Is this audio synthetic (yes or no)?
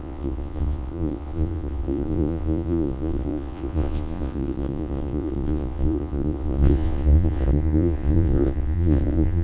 yes